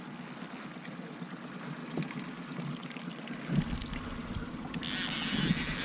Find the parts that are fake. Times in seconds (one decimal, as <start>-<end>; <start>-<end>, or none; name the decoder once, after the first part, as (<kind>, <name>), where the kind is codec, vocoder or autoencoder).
none